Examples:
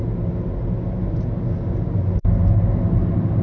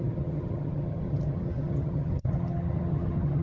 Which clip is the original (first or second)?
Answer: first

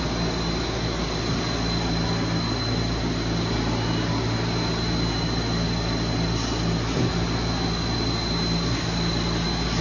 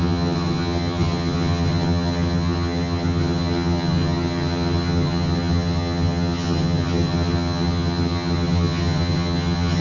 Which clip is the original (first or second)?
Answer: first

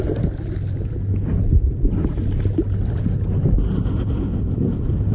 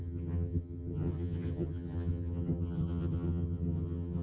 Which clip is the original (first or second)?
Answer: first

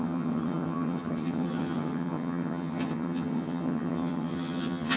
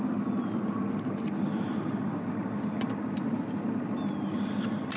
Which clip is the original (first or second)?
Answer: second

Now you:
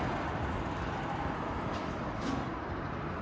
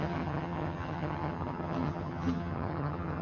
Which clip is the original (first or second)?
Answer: first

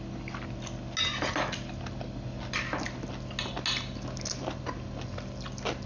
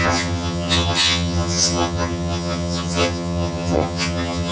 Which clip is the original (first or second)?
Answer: first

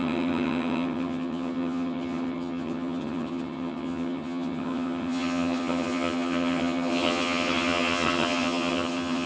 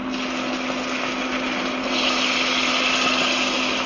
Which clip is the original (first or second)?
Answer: second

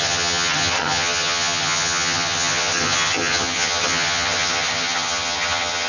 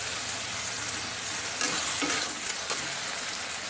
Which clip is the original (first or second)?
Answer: second